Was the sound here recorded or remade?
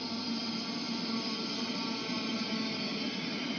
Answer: recorded